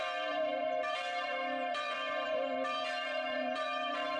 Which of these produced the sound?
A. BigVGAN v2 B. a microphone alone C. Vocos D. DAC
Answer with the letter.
A